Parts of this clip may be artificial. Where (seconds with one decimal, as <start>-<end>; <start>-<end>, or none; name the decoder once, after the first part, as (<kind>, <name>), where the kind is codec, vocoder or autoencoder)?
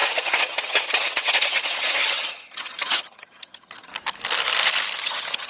0.0-3.9 (vocoder, HiFi-GAN); 5.0-5.5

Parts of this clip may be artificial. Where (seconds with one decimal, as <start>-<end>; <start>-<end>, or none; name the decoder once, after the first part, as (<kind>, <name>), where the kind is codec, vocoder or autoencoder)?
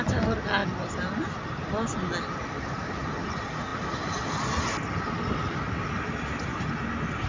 none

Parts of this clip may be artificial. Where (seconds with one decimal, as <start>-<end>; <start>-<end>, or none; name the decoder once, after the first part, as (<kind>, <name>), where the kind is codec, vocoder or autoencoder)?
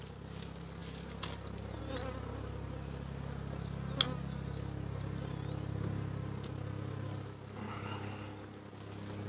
none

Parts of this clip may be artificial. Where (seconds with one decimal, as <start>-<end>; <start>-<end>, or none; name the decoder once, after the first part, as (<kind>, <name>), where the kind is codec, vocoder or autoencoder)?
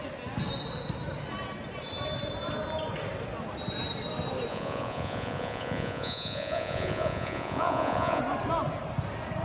4.5-8.2 (vocoder, Vocos)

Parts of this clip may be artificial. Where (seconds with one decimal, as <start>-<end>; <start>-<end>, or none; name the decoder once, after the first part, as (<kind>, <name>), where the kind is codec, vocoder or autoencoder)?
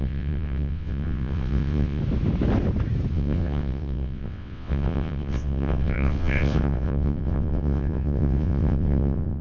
0.0-2.0 (vocoder, WaveNeXt); 3.1-9.4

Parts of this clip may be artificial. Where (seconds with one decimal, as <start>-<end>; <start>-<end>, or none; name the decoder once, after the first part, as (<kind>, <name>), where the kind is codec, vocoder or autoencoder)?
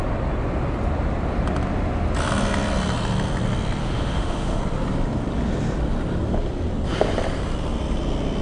3.8-4.6 (autoencoder, DAC-VAE)